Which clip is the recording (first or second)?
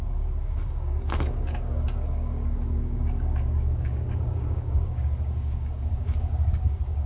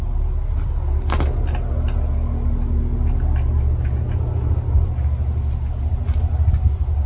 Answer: second